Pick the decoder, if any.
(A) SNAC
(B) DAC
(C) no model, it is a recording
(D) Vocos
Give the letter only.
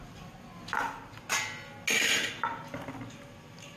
C